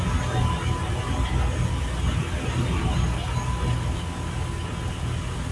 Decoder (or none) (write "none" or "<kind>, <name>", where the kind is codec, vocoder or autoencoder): none